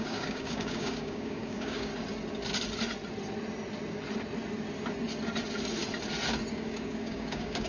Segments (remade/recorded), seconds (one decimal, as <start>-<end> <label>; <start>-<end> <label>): 0.0-1.9 remade; 1.9-6.5 recorded; 6.5-7.7 remade